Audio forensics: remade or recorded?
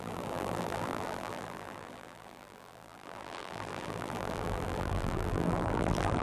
remade